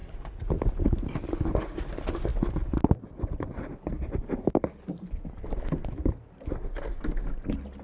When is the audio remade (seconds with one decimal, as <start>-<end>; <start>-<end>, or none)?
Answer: none